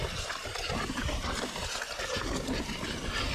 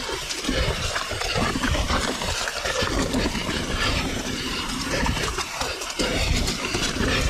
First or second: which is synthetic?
second